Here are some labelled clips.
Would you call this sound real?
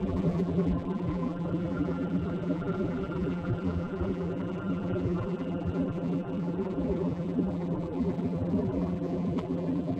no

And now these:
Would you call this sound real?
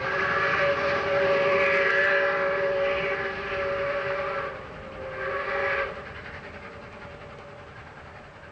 yes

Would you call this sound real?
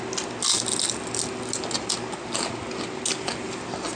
yes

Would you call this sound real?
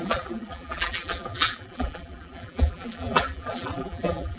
no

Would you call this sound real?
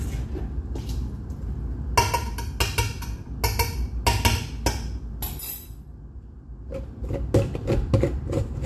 yes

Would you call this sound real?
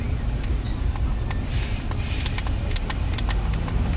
yes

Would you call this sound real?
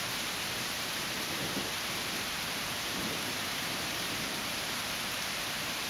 no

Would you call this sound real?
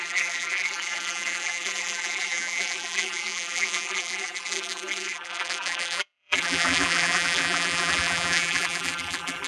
no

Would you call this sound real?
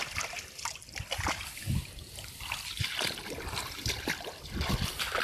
no